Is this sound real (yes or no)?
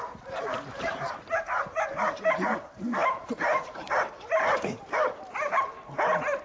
no